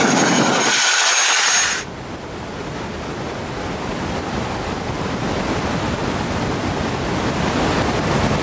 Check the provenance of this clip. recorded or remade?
recorded